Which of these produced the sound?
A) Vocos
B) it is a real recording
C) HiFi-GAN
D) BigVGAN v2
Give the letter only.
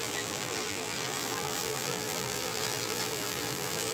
D